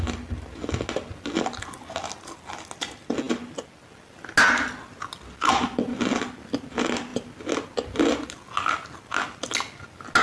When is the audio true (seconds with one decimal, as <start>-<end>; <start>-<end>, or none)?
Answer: 0.0-10.2